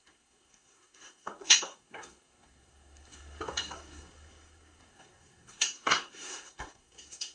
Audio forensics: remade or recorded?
remade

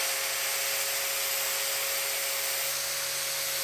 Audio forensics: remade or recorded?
recorded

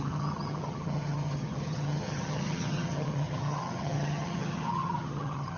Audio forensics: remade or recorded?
remade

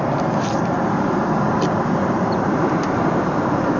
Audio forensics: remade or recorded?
remade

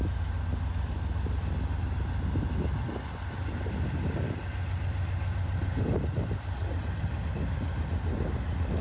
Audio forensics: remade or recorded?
recorded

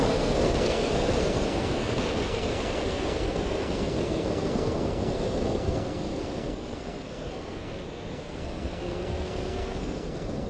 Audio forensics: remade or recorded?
remade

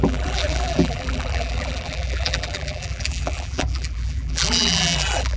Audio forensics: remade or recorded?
remade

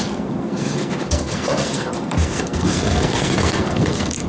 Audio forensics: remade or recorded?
remade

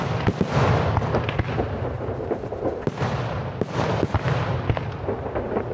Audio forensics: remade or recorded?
recorded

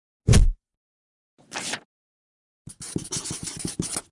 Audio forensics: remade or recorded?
recorded